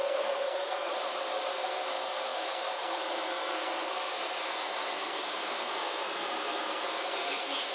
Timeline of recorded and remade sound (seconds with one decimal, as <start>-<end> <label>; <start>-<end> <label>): 0.0-0.9 remade; 0.9-1.5 recorded; 1.5-7.7 remade